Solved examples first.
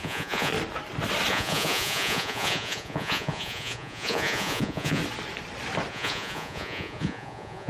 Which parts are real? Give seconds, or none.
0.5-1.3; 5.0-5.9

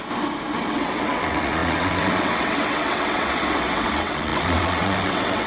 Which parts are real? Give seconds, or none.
0.0-0.7

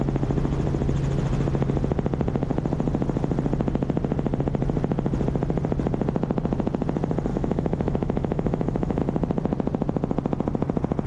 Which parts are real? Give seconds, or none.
0.0-7.3; 9.0-11.1

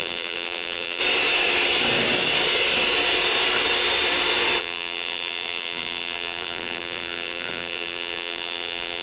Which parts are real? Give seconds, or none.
1.0-4.6

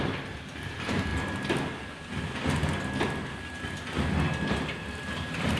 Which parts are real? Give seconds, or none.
1.1-4.5

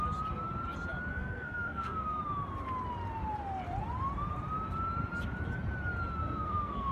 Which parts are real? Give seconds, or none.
0.0-1.1; 2.2-6.2

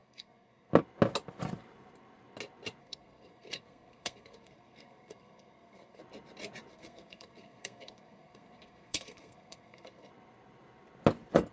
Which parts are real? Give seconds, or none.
0.7-2.8; 6.0-6.7; 10.1-11.5

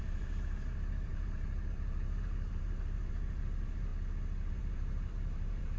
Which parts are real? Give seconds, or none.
3.9-4.5